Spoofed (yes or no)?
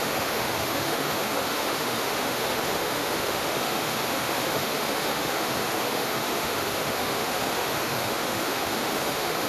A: yes